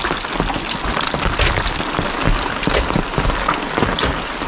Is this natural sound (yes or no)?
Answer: yes